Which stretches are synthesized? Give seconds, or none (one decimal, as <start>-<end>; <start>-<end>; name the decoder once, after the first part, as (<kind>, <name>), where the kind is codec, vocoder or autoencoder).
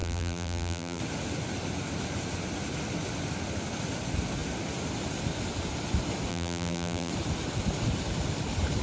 0.0-1.0 (vocoder, BigVGAN v2); 6.3-7.1